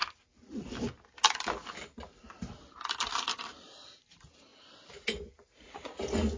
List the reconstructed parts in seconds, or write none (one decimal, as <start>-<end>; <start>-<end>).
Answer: 0.0-3.8